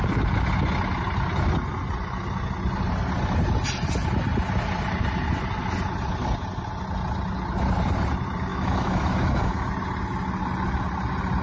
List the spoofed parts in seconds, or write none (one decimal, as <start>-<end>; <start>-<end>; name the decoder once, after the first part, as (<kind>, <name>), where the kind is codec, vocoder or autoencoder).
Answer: 8.5-9.7 (autoencoder, DAC-VAE)